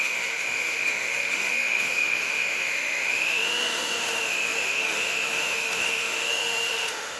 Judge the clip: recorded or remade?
remade